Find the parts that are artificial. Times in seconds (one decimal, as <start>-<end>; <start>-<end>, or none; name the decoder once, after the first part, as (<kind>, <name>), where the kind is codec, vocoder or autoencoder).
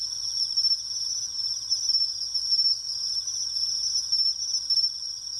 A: 1.3-1.9 (vocoder, BigVGAN v2); 2.7-4.4